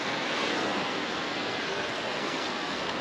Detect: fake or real fake